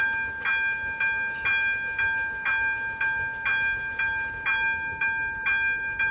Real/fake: real